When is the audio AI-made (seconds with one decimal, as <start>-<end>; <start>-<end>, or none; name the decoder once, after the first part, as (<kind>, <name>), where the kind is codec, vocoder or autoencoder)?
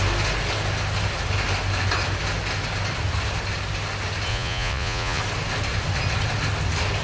4.3-5.2 (vocoder, Vocos)